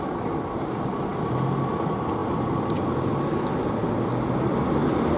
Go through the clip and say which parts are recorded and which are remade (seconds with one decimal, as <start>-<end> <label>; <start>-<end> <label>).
0.0-5.2 recorded